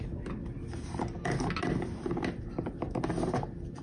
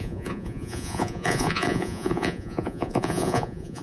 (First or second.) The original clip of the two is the first